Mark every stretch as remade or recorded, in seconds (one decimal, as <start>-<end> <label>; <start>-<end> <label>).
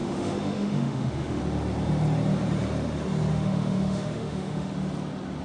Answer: 0.0-1.4 remade; 1.4-3.3 recorded; 3.3-4.7 remade; 4.7-5.4 recorded